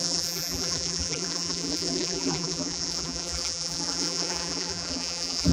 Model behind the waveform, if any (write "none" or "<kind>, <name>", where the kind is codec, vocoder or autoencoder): vocoder, BigVGAN v2